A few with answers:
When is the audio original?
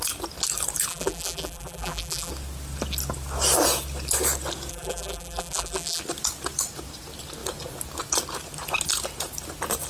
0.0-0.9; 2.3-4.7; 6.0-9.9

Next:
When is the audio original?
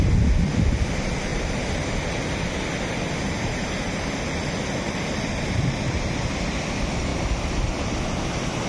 0.0-1.3; 1.9-8.7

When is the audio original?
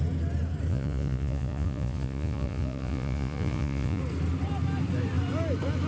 0.0-0.7; 4.0-5.9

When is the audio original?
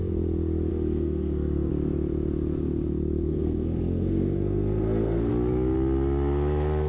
0.0-0.7; 1.7-3.2; 5.3-6.9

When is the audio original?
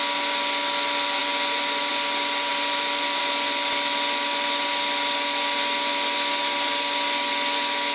0.0-2.5; 3.2-7.9